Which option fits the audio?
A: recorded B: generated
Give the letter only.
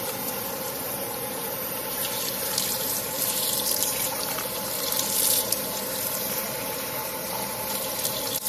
B